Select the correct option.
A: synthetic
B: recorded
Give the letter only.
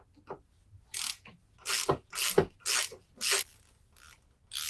B